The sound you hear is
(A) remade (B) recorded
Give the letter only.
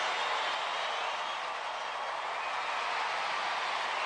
B